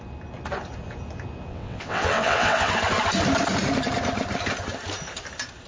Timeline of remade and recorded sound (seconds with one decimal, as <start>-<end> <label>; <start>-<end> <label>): 0.0-1.5 recorded; 1.5-2.7 remade; 2.7-5.7 recorded